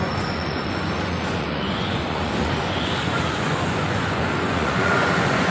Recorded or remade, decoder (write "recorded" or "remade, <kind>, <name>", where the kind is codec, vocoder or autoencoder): remade, vocoder, Vocos